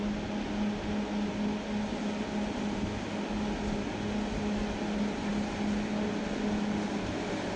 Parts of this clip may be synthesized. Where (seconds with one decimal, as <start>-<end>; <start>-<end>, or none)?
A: none